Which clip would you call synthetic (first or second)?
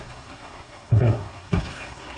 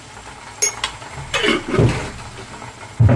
first